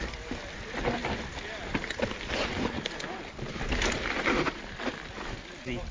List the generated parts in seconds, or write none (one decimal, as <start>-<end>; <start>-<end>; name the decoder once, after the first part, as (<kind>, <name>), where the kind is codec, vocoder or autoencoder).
none